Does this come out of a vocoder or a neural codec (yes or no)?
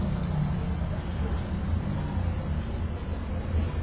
no